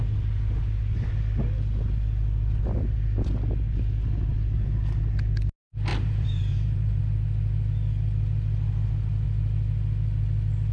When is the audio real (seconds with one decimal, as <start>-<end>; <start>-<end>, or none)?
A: 0.0-5.9; 7.0-10.7

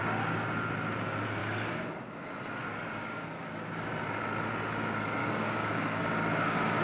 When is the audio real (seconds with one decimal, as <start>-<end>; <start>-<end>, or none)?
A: 0.0-1.4; 2.0-3.0; 3.9-5.2; 6.0-6.8